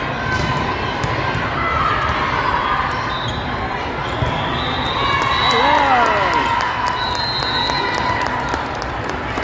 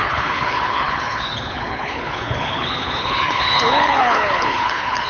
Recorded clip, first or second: first